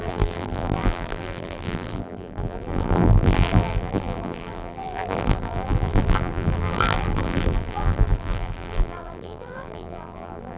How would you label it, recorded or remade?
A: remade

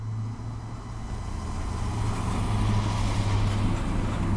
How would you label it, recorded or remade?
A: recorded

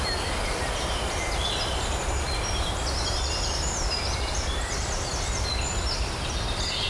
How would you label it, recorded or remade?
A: remade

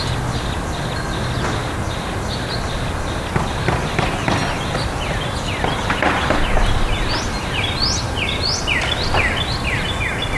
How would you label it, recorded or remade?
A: recorded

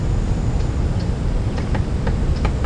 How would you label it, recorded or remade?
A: recorded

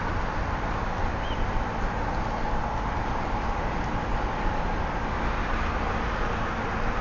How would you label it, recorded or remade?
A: recorded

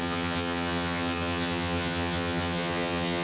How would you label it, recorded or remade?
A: remade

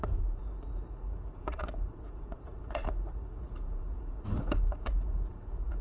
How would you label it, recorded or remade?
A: remade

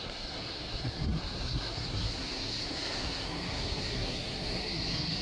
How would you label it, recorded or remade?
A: remade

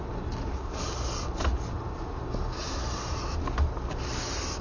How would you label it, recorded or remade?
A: recorded